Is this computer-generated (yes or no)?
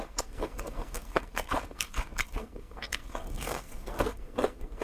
yes